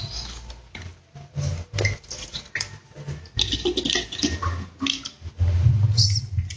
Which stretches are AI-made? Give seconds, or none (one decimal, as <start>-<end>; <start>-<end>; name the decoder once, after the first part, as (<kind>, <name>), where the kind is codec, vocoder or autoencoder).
none

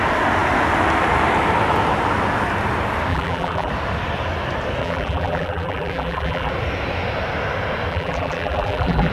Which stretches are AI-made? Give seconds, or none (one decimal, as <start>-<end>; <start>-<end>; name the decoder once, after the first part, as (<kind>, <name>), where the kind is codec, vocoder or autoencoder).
3.1-3.7 (vocoder, BigVGAN v2); 4.8-6.5; 7.9-9.1